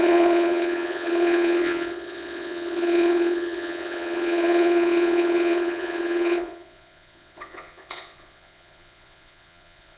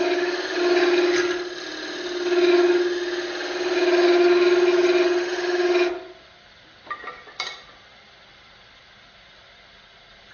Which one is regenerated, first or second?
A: first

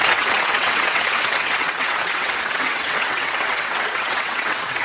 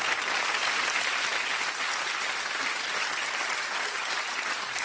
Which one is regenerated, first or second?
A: first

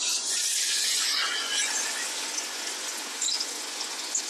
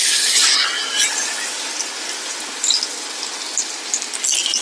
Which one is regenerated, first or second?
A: first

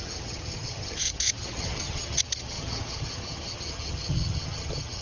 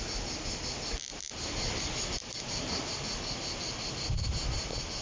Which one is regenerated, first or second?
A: first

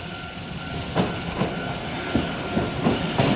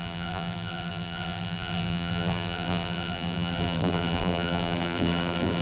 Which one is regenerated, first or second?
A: second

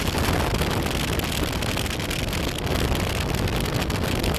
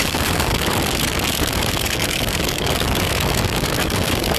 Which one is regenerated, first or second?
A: second